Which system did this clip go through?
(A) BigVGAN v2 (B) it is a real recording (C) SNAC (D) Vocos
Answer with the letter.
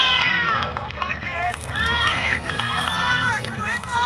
C